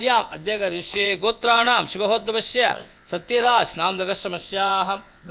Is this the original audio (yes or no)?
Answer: no